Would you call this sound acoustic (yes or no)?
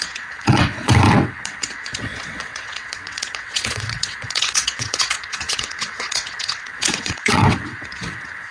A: no